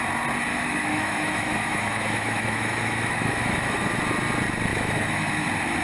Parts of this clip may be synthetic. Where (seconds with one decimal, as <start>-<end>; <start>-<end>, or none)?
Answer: 0.5-4.0; 4.7-5.3